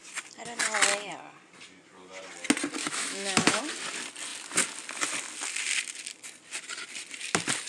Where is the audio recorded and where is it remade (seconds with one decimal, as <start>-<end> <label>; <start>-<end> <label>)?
0.0-2.8 recorded; 2.8-3.6 remade; 3.6-7.7 recorded